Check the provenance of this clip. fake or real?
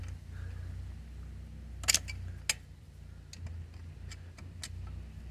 real